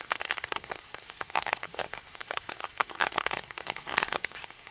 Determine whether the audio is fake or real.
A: fake